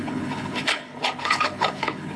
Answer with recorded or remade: remade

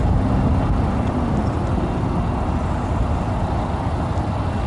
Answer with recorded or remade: recorded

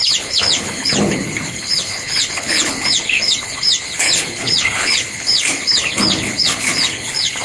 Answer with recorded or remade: remade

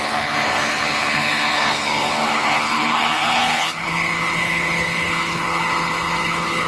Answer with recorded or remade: remade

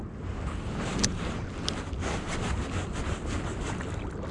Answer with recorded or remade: recorded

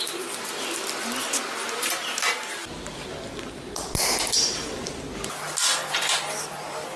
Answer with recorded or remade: recorded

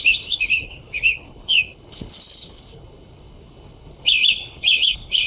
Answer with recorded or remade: remade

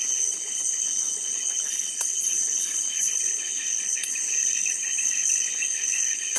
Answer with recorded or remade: remade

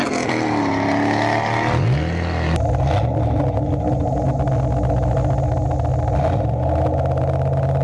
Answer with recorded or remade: recorded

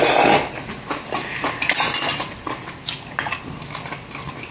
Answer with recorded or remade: recorded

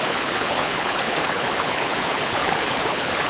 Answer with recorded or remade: remade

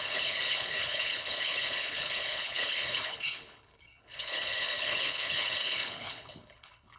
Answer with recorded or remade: remade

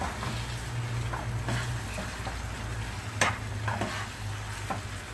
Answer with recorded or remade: recorded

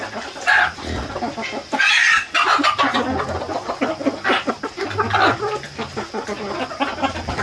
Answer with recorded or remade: recorded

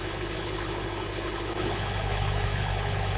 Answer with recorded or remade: remade